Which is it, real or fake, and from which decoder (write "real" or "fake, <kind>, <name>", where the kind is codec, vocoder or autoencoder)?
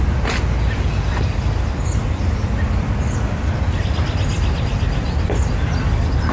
real